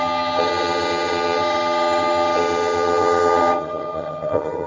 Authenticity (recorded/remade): remade